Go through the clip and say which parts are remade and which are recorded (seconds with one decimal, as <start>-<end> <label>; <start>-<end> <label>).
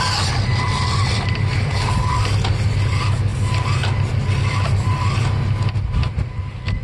0.0-3.3 remade; 3.3-4.1 recorded; 4.1-6.8 remade